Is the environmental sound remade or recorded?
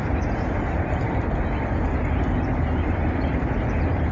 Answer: recorded